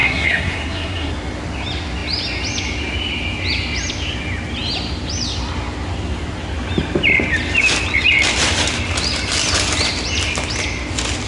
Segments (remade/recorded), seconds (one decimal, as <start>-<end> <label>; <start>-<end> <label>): 0.0-1.1 remade; 1.1-11.3 recorded